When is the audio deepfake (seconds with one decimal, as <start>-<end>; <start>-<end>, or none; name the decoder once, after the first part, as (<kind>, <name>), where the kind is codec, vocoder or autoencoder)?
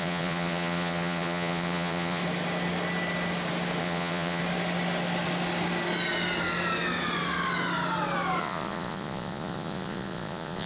0.0-2.2 (vocoder, Vocos); 3.8-4.4; 8.4-10.7